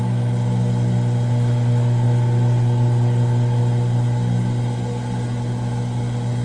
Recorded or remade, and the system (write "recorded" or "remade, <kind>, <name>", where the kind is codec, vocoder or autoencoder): recorded